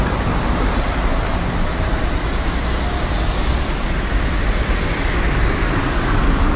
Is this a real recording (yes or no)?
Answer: yes